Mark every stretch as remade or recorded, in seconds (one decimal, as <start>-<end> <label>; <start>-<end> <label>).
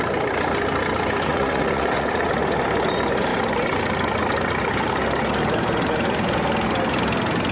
0.0-1.3 recorded; 1.3-2.3 remade; 2.3-7.5 recorded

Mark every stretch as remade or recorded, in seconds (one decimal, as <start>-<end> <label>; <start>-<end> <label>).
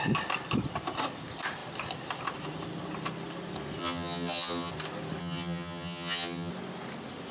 0.0-3.8 recorded; 3.8-4.7 remade; 4.7-5.2 recorded; 5.2-6.5 remade; 6.5-7.3 recorded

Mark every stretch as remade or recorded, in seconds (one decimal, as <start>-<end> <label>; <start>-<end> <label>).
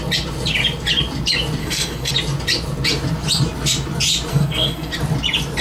0.0-1.6 recorded; 1.6-2.1 remade; 2.1-4.3 recorded; 4.3-4.9 remade; 4.9-5.6 recorded